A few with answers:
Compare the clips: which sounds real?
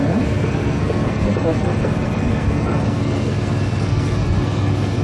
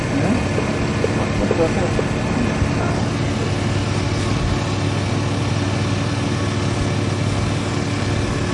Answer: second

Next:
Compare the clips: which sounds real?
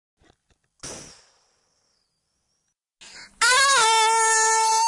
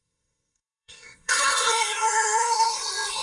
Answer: first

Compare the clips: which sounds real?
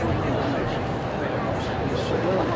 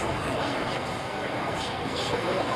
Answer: first